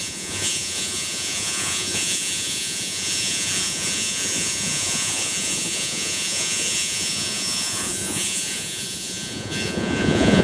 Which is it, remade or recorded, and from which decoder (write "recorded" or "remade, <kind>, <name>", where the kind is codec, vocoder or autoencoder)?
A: remade, vocoder, Vocos